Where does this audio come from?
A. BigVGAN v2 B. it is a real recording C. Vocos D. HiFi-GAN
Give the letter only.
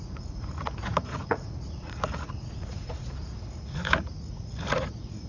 C